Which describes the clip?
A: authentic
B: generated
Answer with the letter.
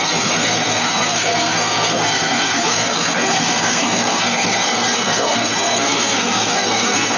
B